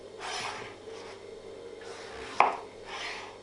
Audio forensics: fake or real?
real